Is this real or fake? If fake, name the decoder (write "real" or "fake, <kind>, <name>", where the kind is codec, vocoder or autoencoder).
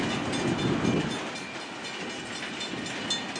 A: real